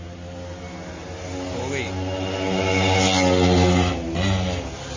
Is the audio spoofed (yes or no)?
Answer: no